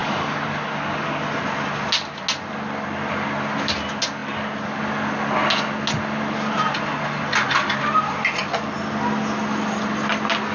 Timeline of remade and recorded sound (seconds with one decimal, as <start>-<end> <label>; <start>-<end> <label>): 0.0-1.2 remade; 1.2-10.5 recorded